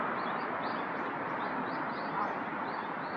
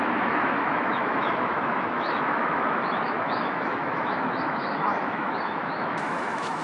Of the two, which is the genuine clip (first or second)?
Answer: first